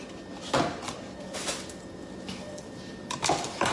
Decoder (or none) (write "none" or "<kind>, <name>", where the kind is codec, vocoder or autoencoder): none